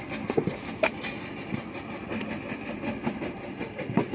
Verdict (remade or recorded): recorded